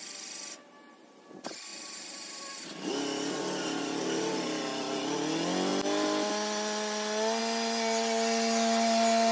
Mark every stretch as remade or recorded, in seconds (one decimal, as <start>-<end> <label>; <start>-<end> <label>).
0.0-1.7 recorded; 1.7-2.9 remade; 2.9-9.3 recorded